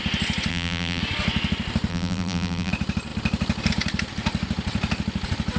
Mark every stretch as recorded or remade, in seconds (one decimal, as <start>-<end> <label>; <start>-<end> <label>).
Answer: 0.0-0.5 recorded; 0.5-1.0 remade; 1.0-1.9 recorded; 1.9-2.7 remade; 2.7-5.6 recorded